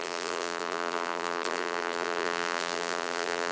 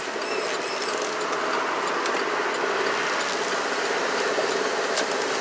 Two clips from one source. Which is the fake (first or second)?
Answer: first